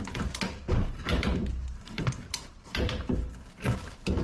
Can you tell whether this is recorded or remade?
remade